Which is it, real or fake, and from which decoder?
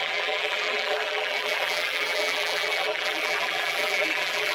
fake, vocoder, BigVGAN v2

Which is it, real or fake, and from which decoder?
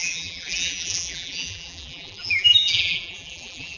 fake, vocoder, BigVGAN v2